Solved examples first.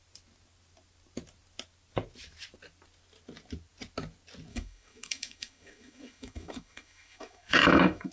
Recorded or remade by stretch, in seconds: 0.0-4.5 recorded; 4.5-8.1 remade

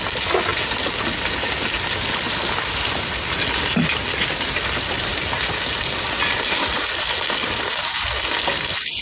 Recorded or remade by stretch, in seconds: 0.0-9.0 recorded

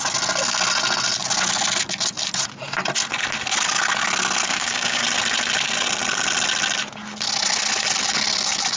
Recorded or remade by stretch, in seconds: 0.0-4.5 recorded; 4.5-5.0 remade; 5.0-8.8 recorded